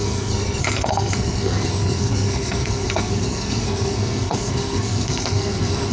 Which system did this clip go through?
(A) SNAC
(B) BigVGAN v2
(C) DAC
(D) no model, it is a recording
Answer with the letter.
A